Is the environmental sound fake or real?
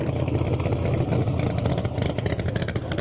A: real